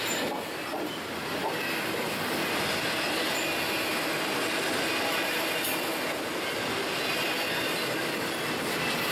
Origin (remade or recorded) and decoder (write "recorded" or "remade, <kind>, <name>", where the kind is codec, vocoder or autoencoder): recorded